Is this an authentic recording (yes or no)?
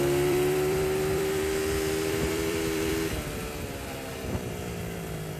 no